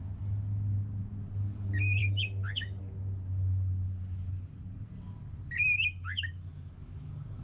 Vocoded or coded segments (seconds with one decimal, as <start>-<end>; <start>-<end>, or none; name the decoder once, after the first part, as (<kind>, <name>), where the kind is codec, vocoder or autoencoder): 2.0-2.8 (autoencoder, DAC-VAE); 5.8-7.4